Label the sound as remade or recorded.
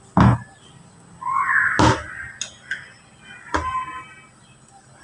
recorded